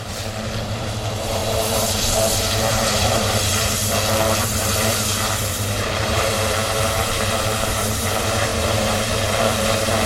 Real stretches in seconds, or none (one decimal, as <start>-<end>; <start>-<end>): 3.8-4.4